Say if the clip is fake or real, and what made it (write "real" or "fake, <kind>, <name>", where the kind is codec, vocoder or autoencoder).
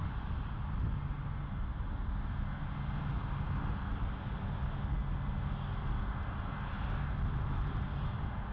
real